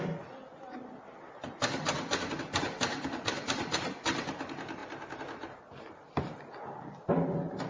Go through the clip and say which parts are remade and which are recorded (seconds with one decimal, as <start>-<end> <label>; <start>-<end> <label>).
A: 0.0-7.7 recorded